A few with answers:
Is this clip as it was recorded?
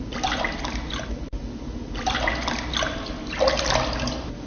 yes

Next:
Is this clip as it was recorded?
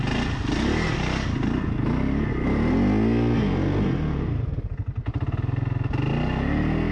yes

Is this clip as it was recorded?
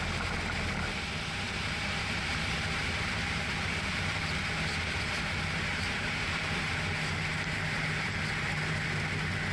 yes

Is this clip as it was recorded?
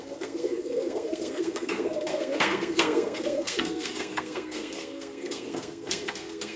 no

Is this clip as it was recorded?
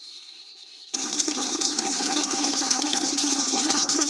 no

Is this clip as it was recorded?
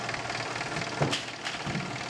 yes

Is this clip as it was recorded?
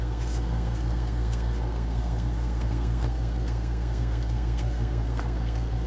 no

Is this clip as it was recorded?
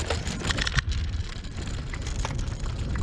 yes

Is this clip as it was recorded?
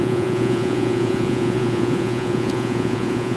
no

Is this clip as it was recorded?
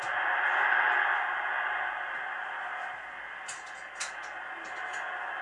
yes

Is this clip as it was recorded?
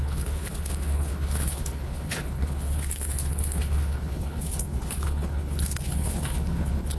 no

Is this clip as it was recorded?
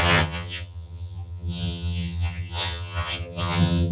no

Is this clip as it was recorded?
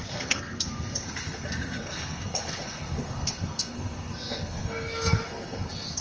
no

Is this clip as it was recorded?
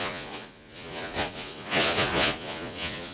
no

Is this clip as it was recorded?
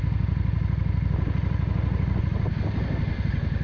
yes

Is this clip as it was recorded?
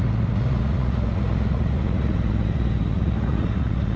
no